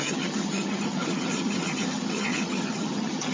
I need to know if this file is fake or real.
fake